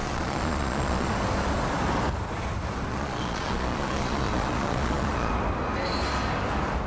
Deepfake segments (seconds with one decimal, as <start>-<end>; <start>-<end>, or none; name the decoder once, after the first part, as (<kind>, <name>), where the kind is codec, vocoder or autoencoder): 0.0-1.1 (vocoder, Vocos); 2.9-5.3